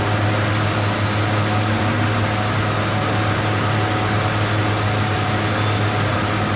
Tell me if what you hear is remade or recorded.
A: recorded